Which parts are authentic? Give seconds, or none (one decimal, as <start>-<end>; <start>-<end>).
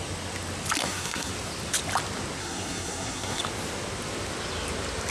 0.0-0.8; 1.3-2.4; 3.4-5.1